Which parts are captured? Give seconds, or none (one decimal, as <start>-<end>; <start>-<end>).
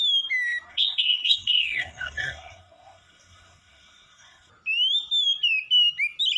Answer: 0.0-0.7; 4.5-6.4